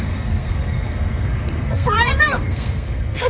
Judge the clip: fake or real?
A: fake